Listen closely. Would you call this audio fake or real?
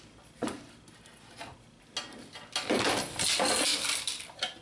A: real